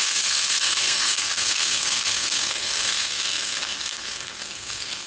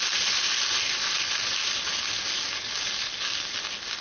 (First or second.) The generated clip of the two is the first